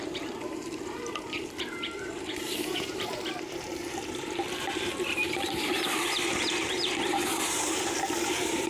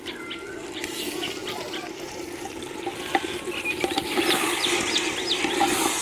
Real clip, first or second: second